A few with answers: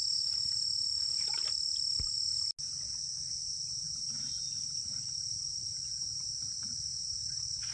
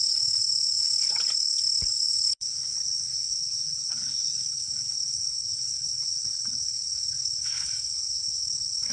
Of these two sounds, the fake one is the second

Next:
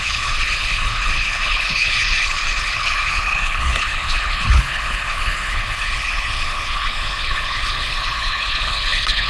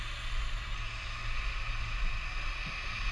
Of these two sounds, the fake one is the first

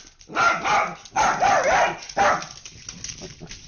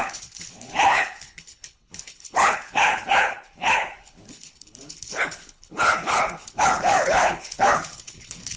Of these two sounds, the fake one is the second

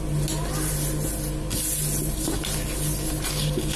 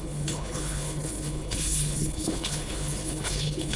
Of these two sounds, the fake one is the second